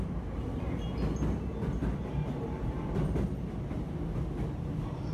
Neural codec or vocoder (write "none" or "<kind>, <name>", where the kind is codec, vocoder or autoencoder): none